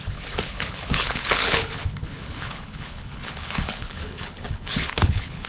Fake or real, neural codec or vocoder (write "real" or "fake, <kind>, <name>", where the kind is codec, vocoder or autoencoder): fake, codec, HILCodec